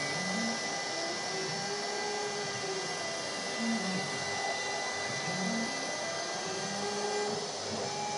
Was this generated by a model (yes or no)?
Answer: no